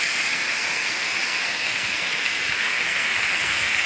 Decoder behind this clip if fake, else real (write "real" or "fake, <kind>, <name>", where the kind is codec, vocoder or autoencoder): fake, codec, SNAC